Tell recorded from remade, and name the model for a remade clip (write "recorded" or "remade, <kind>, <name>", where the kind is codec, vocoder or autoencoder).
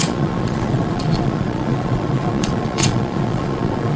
remade, vocoder, Vocos